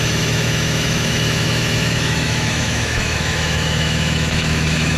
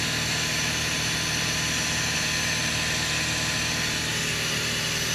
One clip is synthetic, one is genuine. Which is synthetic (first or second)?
first